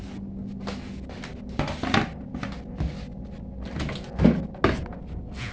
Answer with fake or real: real